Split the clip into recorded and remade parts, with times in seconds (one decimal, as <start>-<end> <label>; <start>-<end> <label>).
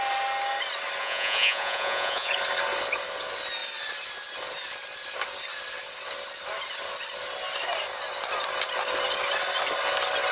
0.0-1.0 recorded; 1.0-2.3 remade; 2.3-10.3 recorded